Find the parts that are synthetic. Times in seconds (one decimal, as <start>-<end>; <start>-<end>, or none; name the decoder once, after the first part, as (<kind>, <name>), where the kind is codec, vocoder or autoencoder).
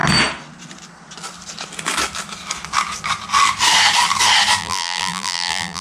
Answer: 4.6-5.8 (vocoder, BigVGAN v2)